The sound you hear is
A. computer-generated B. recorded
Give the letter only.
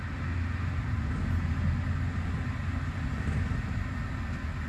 B